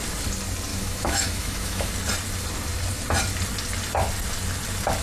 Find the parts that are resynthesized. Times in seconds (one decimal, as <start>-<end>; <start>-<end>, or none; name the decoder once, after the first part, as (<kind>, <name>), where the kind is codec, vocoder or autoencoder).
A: 0.7-1.9 (autoencoder, DAC-VAE)